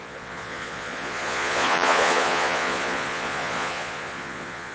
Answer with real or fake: fake